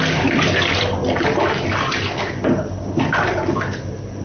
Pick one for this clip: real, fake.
real